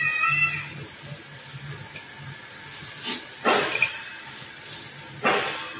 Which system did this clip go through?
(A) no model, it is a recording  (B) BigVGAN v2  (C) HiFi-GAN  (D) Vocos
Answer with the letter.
A